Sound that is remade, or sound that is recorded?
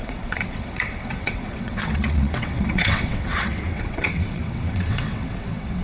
remade